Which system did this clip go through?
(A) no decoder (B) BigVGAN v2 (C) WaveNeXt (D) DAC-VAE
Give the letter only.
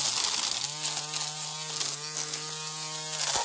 A